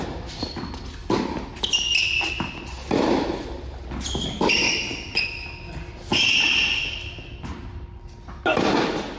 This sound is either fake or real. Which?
real